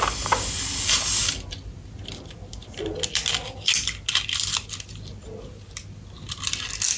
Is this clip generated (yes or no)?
no